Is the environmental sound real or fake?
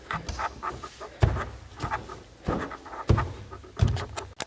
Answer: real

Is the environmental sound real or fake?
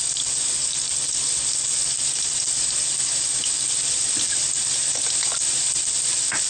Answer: real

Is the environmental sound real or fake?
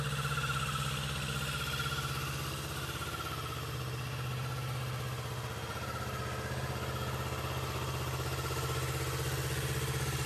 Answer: real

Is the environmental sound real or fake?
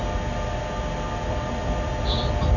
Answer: real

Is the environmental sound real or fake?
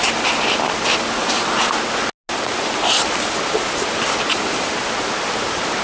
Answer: real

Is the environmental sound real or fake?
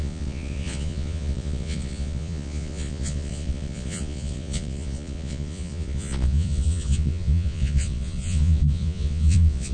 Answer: fake